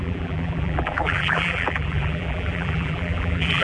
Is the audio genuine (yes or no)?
no